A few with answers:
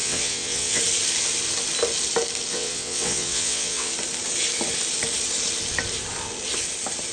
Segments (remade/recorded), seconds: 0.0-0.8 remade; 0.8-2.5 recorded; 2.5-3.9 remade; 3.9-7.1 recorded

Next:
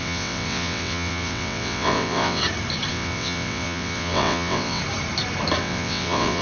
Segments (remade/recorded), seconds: 0.0-2.4 remade; 2.4-2.9 recorded; 2.9-4.8 remade; 4.8-5.6 recorded; 5.6-6.4 remade

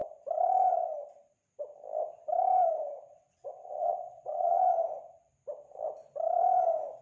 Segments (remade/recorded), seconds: 0.0-3.1 recorded; 3.1-4.6 remade; 4.6-7.0 recorded